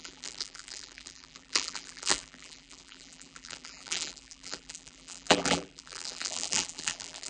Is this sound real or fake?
fake